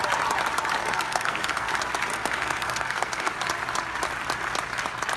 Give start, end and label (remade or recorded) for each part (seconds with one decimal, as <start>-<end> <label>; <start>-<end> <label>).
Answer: 0.0-0.8 recorded; 0.8-1.7 remade; 1.7-2.1 recorded; 2.1-3.3 remade; 3.3-5.2 recorded